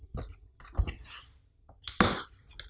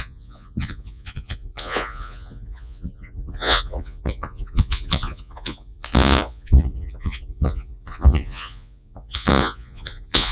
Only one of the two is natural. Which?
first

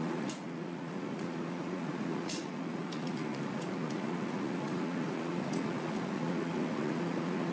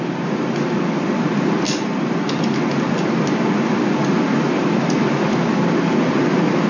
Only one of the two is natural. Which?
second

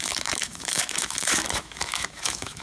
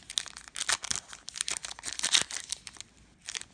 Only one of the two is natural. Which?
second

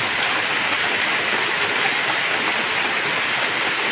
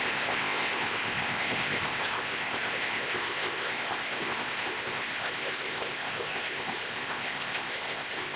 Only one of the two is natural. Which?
first